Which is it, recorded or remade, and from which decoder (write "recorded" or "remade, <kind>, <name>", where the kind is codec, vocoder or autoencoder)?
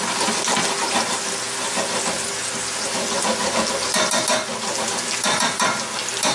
recorded